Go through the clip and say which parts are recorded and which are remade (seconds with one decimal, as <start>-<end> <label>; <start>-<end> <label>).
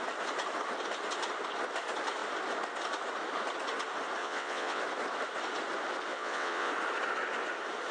0.0-4.2 recorded; 4.2-4.8 remade; 4.8-6.1 recorded; 6.1-6.7 remade; 6.7-7.9 recorded